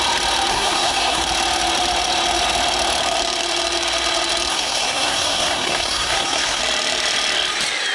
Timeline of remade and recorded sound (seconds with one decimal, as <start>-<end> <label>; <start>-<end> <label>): 0.0-0.5 recorded; 0.5-1.2 remade; 1.2-4.5 recorded; 4.5-6.6 remade; 6.6-7.9 recorded

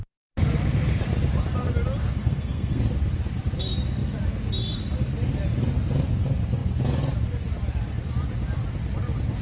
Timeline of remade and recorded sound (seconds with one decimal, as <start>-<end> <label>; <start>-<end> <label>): 0.0-2.2 recorded; 2.2-2.8 remade; 2.8-9.4 recorded

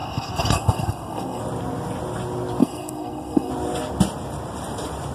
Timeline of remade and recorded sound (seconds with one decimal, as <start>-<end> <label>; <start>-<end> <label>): 0.0-1.4 remade; 1.4-2.6 recorded; 2.6-3.5 remade; 3.5-5.1 recorded

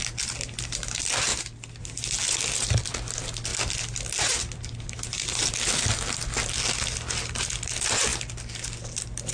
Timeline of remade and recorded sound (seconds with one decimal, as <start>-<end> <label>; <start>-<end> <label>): 0.0-9.3 recorded

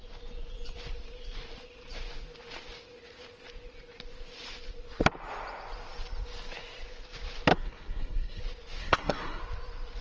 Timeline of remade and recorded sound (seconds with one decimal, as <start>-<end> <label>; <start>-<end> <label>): 0.0-7.5 recorded; 7.5-8.4 remade; 8.4-8.8 recorded; 8.8-9.4 remade; 9.4-10.0 recorded

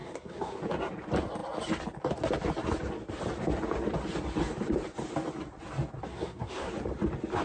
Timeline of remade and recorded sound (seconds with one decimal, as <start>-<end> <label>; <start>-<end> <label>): 0.0-0.6 remade; 0.6-6.1 recorded; 6.1-6.7 remade; 6.7-7.4 recorded

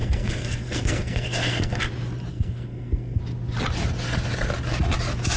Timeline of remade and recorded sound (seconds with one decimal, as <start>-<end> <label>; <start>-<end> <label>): 0.0-1.9 remade; 1.9-2.3 recorded; 2.3-3.2 remade; 3.2-5.4 recorded

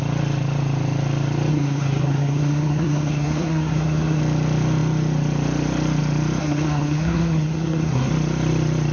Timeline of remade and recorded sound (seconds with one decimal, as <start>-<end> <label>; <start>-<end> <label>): 0.0-1.5 recorded; 1.5-4.2 remade; 4.2-6.4 recorded; 6.4-8.1 remade; 8.1-8.9 recorded